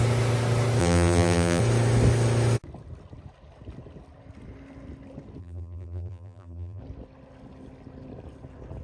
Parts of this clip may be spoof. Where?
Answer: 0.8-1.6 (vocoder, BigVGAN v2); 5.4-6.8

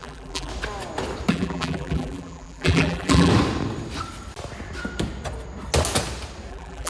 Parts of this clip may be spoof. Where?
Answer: 0.0-0.5 (vocoder, BigVGAN v2); 1.3-3.3; 6.5-6.9

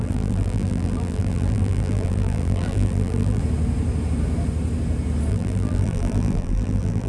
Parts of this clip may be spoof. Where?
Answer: 0.0-3.4 (vocoder, BigVGAN v2); 5.3-7.1

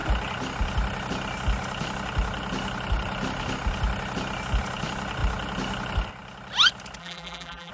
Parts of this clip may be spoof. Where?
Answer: 7.0-7.7 (vocoder, BigVGAN v2)

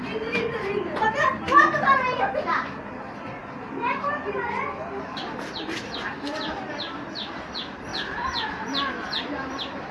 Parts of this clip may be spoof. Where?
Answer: 0.0-7.9 (vocoder, BigVGAN v2); 8.9-9.9

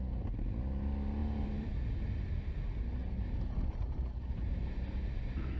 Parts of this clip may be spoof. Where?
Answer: 1.2-1.7 (vocoder, BigVGAN v2); 3.0-4.6

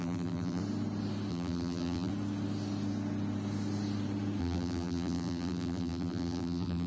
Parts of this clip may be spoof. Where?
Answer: 0.0-0.6 (vocoder, BigVGAN v2); 1.3-2.1; 4.4-6.9